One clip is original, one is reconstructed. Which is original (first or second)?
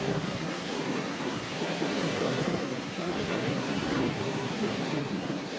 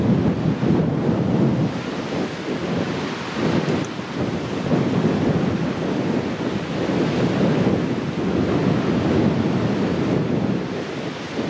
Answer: second